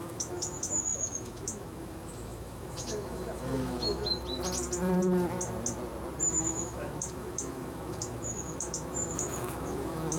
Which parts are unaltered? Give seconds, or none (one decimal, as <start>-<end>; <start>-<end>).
4.0-6.3